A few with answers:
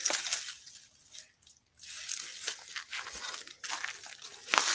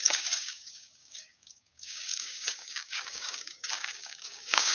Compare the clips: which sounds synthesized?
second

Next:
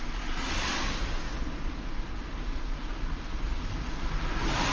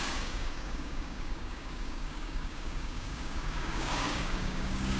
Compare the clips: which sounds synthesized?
second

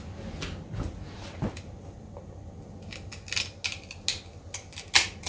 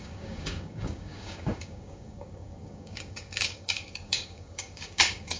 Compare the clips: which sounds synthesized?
second